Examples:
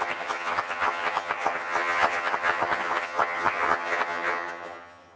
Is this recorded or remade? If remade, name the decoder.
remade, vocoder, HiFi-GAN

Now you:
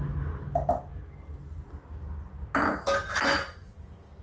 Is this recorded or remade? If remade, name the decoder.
recorded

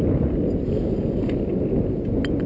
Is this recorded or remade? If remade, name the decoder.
recorded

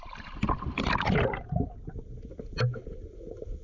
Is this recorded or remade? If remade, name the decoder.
recorded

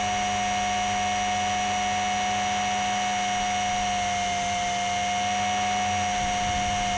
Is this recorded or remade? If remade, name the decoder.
recorded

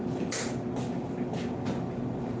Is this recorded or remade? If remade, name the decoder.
recorded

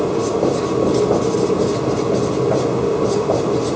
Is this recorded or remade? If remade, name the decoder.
recorded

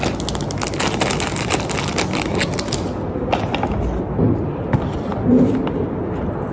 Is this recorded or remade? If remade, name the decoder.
recorded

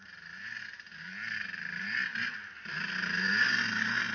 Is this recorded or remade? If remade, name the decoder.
recorded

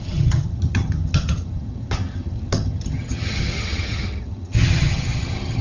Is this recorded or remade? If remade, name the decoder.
remade, vocoder, HiFi-GAN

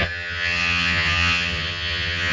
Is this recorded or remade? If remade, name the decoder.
remade, vocoder, HiFi-GAN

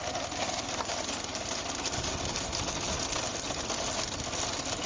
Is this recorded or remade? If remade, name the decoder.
recorded